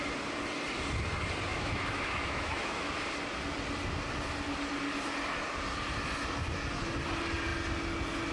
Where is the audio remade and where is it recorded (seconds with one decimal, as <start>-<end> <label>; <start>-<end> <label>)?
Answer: 0.0-1.5 recorded; 1.5-2.9 remade; 2.9-8.3 recorded